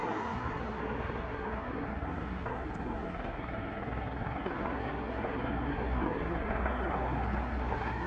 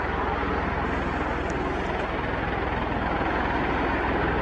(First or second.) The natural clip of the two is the second